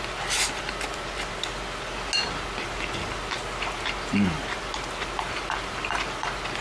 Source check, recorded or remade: recorded